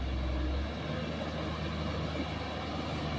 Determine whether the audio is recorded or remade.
recorded